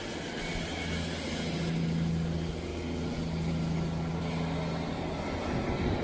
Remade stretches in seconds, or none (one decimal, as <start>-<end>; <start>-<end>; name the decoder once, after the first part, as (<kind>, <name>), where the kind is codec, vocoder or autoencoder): none